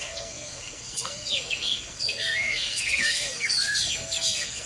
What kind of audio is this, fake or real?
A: fake